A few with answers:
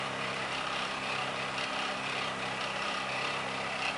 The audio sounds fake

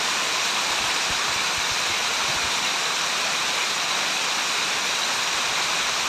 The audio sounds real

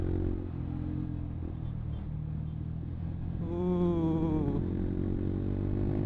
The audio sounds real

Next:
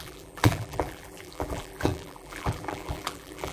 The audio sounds fake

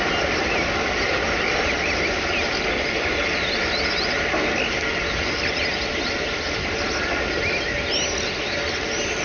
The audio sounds real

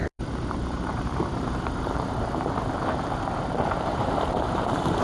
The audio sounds fake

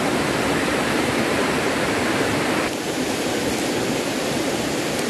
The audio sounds fake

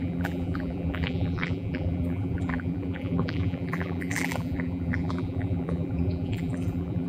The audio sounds fake